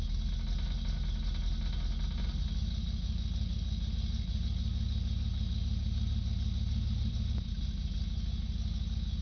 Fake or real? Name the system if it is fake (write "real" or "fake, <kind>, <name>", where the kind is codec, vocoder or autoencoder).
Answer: real